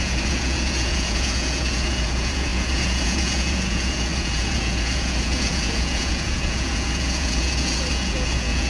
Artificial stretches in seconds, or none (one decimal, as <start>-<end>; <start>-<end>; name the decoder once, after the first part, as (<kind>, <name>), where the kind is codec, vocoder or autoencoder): 0.0-8.7 (vocoder, Vocos)